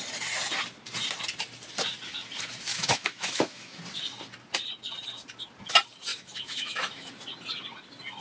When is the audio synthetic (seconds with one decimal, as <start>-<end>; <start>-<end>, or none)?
2.7-3.8; 6.1-7.1